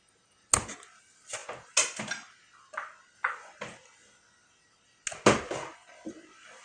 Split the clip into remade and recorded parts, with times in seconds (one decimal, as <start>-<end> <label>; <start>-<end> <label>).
0.0-6.6 recorded